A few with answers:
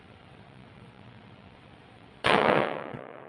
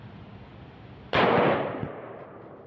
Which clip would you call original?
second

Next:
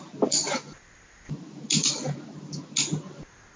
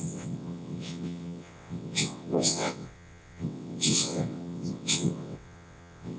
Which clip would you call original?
first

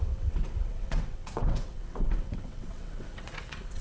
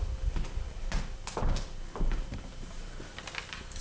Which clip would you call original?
second